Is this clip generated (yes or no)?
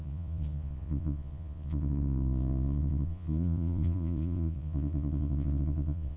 yes